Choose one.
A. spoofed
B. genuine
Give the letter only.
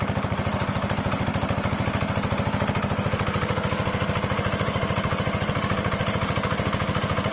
B